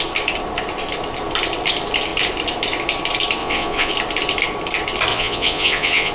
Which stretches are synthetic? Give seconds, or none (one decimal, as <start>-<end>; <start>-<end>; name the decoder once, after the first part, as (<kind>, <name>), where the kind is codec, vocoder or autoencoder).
3.4-3.9 (vocoder, Vocos); 5.1-6.1